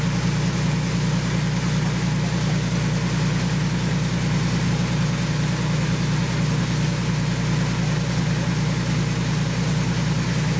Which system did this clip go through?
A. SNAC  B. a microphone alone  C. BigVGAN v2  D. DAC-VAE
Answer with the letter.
B